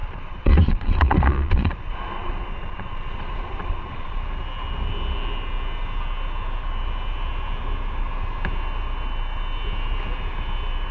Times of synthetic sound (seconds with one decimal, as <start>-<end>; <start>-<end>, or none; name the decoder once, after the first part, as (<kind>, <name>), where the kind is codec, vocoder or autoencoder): 0.0-4.2 (vocoder, Vocos)

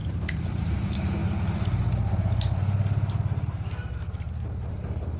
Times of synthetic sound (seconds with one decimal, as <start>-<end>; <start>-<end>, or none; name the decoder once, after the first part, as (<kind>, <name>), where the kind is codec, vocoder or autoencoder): 0.0-1.2 (vocoder, BigVGAN v2); 4.3-5.2